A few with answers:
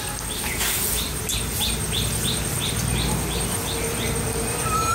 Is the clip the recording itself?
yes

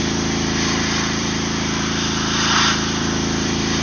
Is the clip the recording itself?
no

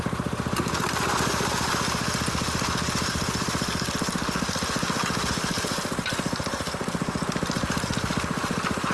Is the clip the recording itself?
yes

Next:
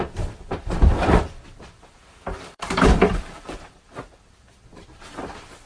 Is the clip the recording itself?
no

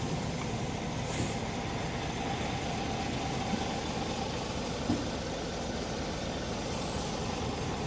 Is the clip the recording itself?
yes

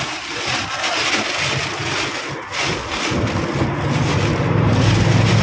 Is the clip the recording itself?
yes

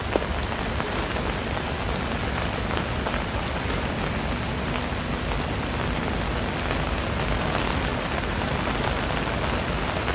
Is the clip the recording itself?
yes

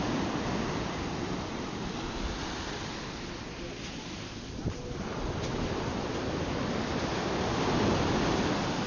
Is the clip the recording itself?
yes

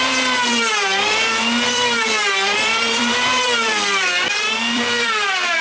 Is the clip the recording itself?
no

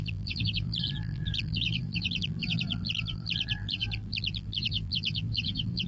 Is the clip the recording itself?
no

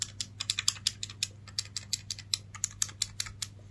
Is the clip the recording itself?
yes